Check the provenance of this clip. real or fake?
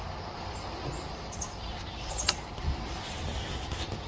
real